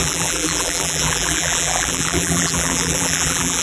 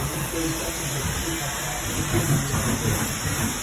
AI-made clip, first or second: first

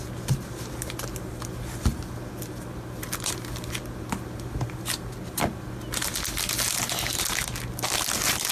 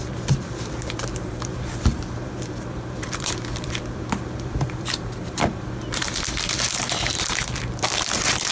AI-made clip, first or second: second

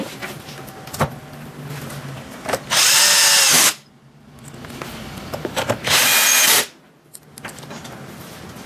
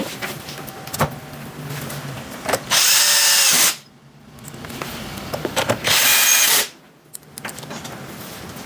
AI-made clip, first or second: second